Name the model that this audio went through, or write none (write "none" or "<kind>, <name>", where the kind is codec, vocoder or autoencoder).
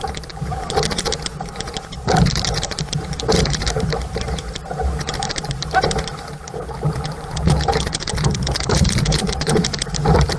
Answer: vocoder, BigVGAN v2